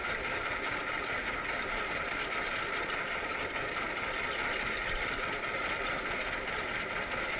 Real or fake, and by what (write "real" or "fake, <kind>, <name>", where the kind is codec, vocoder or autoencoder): real